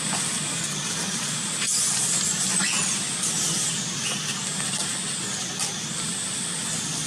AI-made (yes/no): no